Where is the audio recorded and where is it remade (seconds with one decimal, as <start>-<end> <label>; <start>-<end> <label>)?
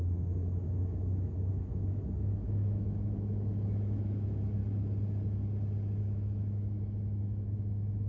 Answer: 0.0-4.6 remade; 4.6-6.0 recorded; 6.0-8.1 remade